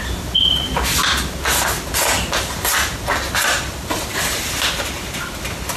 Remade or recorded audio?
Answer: recorded